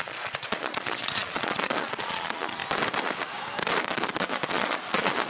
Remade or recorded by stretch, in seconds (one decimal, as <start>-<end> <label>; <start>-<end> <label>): 0.0-2.6 remade; 2.6-3.8 recorded; 3.8-5.3 remade